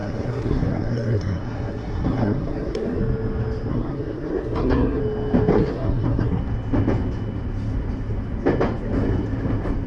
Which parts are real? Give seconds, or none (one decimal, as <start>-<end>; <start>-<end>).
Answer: 3.0-3.7; 5.0-5.5; 6.4-9.9